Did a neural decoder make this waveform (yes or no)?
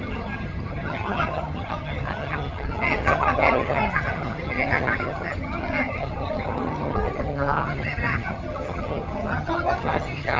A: yes